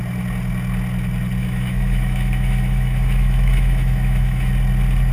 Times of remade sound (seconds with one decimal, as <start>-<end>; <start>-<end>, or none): 1.4-4.5